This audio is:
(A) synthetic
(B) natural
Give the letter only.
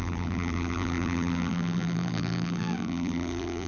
A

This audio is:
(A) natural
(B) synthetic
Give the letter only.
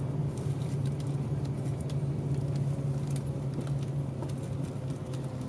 A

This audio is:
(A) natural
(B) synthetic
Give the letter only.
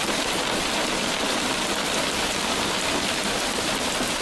B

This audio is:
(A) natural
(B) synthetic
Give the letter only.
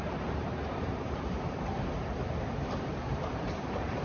B